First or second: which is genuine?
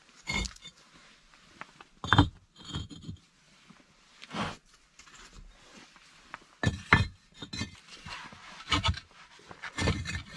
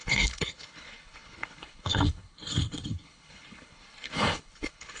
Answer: first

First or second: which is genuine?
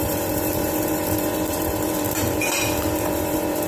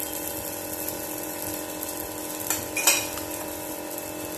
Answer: second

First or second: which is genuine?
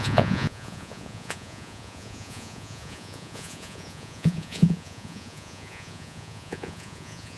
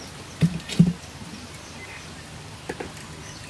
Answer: second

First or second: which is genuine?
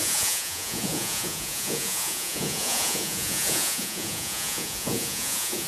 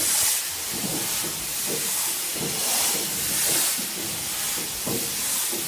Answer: second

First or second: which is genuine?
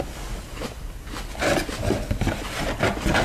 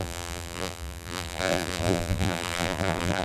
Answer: first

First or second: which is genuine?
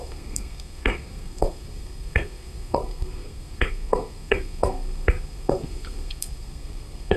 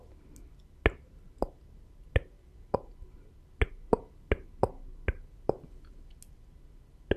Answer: second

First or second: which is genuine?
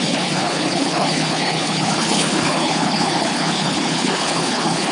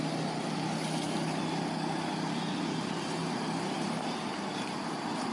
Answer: second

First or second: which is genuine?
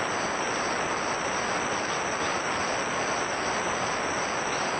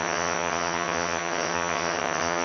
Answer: first